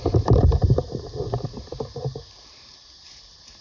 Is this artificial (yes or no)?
yes